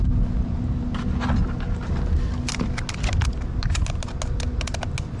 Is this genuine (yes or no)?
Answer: yes